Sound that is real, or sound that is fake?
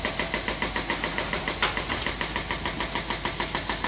real